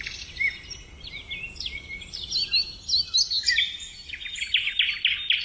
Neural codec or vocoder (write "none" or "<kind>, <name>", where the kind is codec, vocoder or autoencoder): none